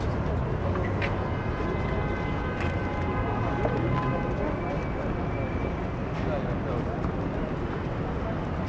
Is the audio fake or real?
real